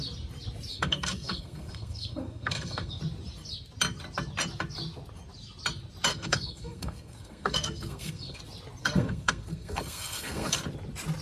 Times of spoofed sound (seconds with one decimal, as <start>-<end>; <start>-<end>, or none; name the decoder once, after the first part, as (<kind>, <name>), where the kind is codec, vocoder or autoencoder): 0.7-3.0 (codec, SNAC); 6.1-8.4; 8.8-10.6